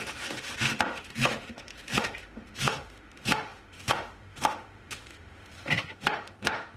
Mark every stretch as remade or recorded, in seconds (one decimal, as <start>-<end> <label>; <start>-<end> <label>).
0.0-6.8 remade